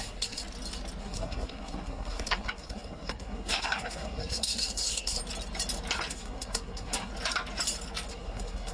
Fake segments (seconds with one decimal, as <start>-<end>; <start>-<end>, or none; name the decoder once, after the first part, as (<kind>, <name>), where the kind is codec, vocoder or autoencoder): 0.0-0.4 (codec, SNAC); 1.0-5.2; 6.1-7.1; 8.1-8.7